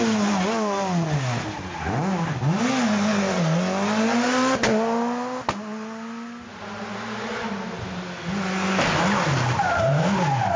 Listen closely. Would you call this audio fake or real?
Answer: real